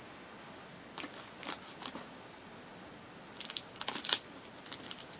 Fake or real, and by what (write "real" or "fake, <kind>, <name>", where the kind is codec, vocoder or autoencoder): real